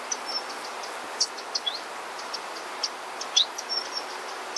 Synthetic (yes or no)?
no